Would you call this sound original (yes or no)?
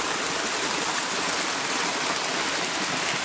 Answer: yes